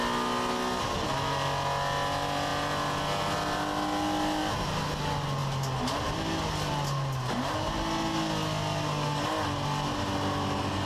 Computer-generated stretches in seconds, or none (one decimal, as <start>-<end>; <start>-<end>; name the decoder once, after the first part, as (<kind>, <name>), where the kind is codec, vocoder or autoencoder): none